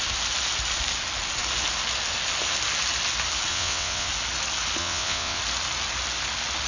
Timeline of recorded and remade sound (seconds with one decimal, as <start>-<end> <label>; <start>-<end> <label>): 0.0-3.5 recorded; 3.5-4.1 remade; 4.1-4.8 recorded; 4.8-5.4 remade; 5.4-6.7 recorded